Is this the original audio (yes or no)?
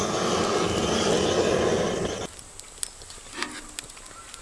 yes